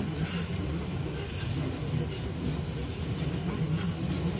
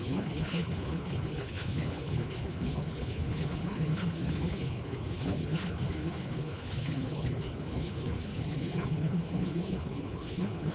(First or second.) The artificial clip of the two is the second